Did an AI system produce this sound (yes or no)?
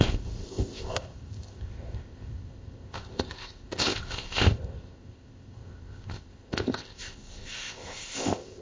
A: yes